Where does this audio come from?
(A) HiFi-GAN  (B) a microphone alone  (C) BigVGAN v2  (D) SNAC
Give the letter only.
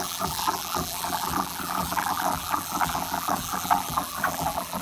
C